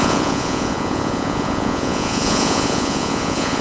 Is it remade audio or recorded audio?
remade